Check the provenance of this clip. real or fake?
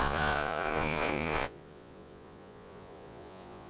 fake